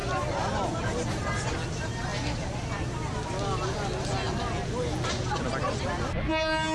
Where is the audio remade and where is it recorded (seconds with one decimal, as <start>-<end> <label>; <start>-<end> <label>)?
0.0-6.7 recorded